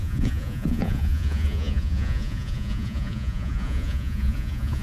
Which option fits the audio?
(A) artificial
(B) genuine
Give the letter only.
A